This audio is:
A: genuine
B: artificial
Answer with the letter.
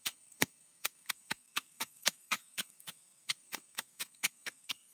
B